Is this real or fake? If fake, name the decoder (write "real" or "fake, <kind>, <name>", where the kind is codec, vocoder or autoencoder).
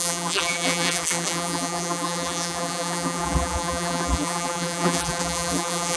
fake, vocoder, BigVGAN v2